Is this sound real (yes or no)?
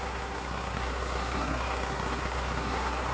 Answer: no